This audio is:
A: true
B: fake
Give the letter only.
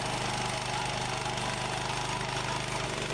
A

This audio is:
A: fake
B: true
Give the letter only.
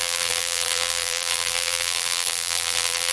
A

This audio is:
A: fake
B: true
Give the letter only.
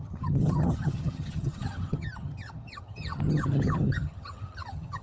A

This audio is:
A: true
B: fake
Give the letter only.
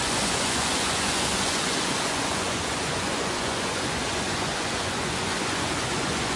B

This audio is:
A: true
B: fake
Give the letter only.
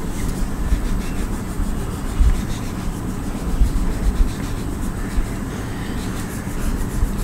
A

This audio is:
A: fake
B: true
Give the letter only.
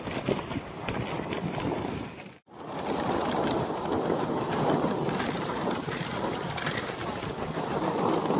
B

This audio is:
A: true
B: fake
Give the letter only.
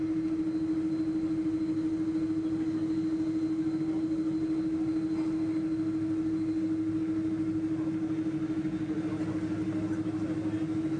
A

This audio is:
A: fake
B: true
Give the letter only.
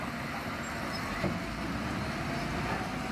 B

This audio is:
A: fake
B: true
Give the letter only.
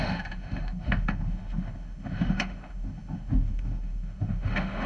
A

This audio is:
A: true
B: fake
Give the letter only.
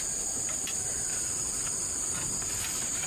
A